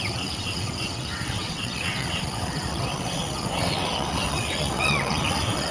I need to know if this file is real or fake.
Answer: fake